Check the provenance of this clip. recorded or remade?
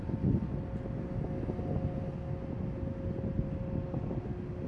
recorded